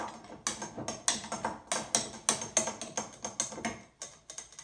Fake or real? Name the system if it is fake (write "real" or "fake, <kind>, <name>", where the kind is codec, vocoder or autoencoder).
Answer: real